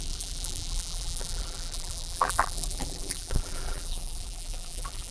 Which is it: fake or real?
fake